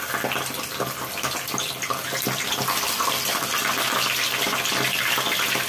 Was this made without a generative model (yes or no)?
yes